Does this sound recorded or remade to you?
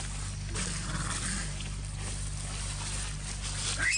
recorded